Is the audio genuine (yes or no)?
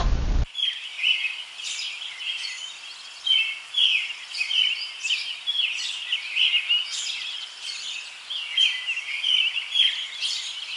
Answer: no